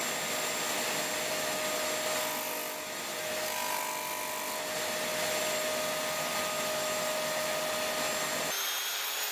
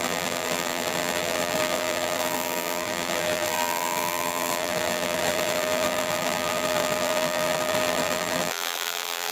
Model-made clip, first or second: second